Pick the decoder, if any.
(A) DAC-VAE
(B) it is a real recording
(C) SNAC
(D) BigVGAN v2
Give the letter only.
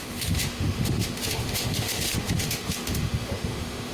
A